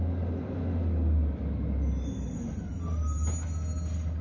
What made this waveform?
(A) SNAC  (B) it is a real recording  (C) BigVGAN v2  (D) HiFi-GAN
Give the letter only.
B